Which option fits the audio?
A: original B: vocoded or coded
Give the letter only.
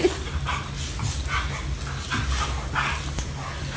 A